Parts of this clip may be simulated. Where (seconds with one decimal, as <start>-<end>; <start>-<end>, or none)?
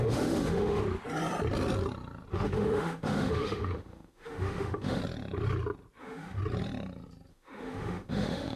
0.0-0.8; 2.3-5.0; 6.0-6.4; 7.3-8.6